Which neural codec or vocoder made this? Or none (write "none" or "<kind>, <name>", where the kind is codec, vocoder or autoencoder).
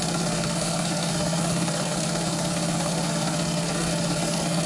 codec, SNAC